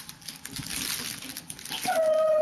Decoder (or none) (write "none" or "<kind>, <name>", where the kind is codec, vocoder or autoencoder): none